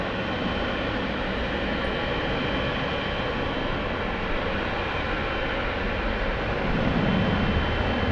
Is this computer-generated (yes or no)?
no